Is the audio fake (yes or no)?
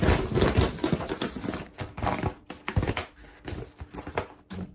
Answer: no